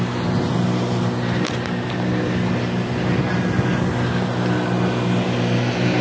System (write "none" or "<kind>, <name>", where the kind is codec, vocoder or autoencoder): none